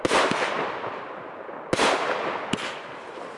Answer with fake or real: real